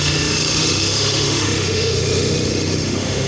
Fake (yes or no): yes